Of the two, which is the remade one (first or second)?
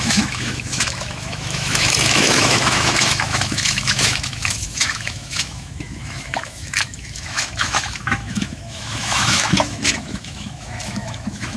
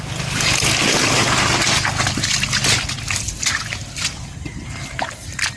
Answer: first